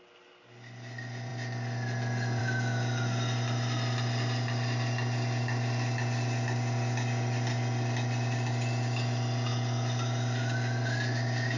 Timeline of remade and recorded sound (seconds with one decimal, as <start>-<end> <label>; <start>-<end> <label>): 0.0-11.6 recorded